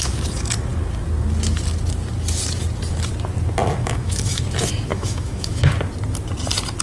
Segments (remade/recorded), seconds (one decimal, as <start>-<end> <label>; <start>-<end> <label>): 0.0-3.8 recorded; 3.8-4.4 remade; 4.4-4.9 recorded; 4.9-5.6 remade; 5.6-6.8 recorded